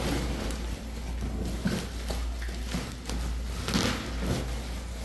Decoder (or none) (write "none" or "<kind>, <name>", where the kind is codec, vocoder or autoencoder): none